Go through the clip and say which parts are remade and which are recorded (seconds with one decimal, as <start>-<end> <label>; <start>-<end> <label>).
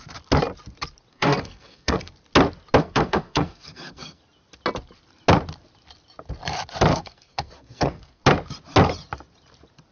0.0-1.1 recorded; 1.1-2.1 remade; 2.1-2.8 recorded; 2.8-4.2 remade; 4.2-6.9 recorded; 6.9-8.2 remade; 8.2-9.9 recorded